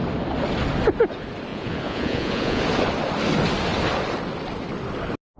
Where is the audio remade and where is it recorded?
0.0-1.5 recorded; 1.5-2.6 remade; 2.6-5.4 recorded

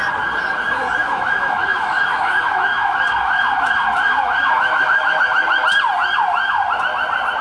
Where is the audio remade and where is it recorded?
0.0-1.0 recorded; 1.0-5.2 remade; 5.2-7.4 recorded